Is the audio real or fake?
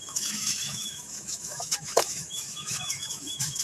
fake